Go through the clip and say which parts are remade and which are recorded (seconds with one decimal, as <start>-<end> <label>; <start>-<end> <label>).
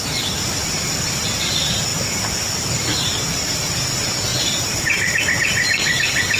0.0-1.9 recorded; 1.9-3.1 remade; 3.1-4.3 recorded; 4.3-5.2 remade; 5.2-6.4 recorded